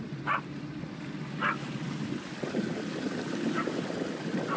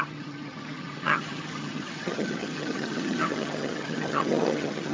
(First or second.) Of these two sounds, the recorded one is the first